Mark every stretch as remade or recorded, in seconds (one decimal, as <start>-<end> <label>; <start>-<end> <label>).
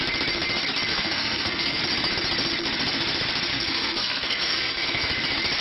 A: 0.0-0.9 recorded; 0.9-1.8 remade; 1.8-3.5 recorded; 3.5-5.0 remade; 5.0-5.6 recorded